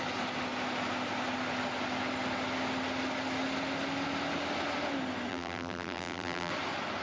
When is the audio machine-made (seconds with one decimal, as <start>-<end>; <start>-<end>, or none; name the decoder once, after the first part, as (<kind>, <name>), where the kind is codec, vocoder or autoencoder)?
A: 5.3-6.5 (vocoder, BigVGAN v2)